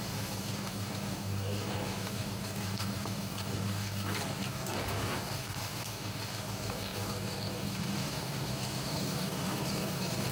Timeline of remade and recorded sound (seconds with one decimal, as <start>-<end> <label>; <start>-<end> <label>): 0.0-10.3 remade